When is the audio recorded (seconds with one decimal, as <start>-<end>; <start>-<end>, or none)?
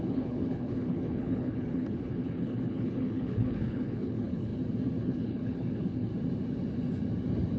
4.5-5.0; 6.1-7.6